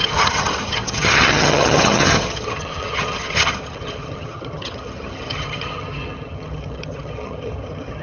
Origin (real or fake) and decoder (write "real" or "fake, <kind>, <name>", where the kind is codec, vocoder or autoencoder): fake, vocoder, HiFi-GAN